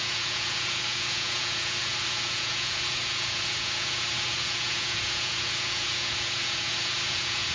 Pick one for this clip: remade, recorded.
remade